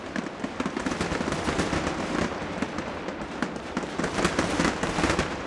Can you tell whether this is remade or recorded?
recorded